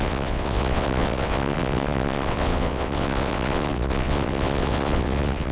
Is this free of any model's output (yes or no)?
no